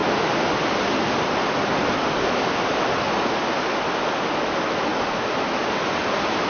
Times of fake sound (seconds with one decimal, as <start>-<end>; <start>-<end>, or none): none